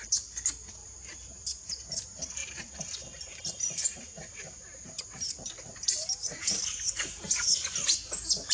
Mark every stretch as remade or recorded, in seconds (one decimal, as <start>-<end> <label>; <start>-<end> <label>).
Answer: 0.0-0.8 recorded; 0.8-1.7 remade; 1.7-8.5 recorded